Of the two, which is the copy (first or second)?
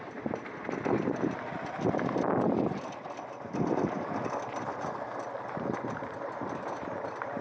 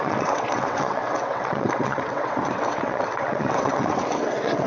second